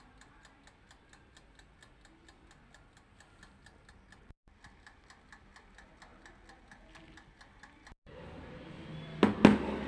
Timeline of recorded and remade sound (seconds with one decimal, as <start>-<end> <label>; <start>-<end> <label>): 0.0-9.9 recorded